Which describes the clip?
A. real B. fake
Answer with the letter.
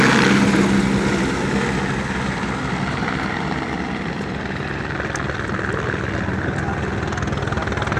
A